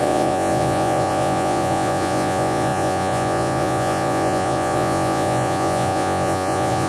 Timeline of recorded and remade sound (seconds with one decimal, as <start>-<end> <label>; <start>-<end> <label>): 0.0-6.9 remade